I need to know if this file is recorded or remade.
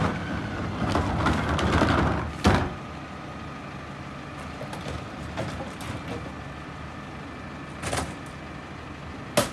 recorded